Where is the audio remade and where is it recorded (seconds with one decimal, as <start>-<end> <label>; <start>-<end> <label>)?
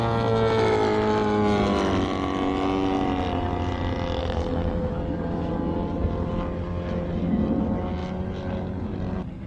0.0-4.2 recorded; 4.2-4.9 remade; 4.9-9.5 recorded